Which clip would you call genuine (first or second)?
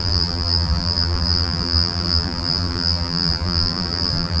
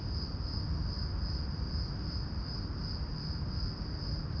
second